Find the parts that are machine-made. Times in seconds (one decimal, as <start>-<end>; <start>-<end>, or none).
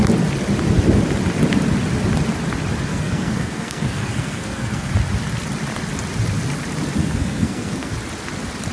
2.9-4.9; 7.0-7.9